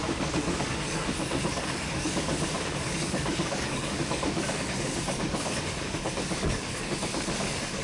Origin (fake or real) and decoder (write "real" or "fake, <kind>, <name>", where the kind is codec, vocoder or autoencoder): fake, codec, DAC